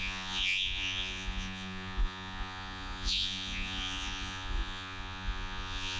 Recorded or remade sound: remade